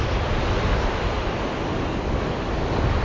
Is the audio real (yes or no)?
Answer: yes